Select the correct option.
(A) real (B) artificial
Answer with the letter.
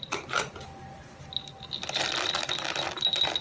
A